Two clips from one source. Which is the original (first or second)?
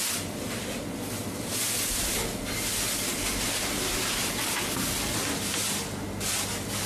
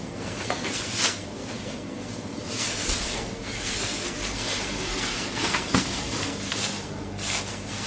first